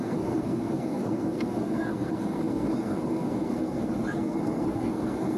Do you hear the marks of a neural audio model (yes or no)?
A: yes